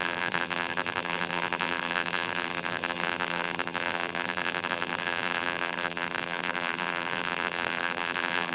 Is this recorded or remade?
remade